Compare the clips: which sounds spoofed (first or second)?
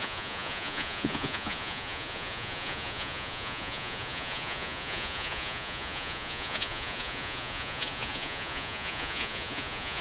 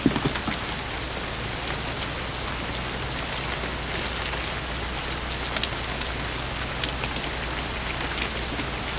first